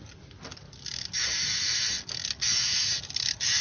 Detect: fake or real real